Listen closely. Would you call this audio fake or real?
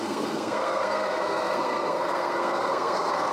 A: fake